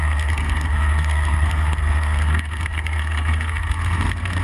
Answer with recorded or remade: remade